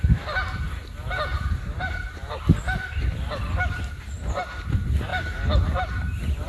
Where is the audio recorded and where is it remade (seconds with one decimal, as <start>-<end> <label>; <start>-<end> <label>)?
0.0-1.3 recorded; 1.3-4.0 remade; 4.0-6.5 recorded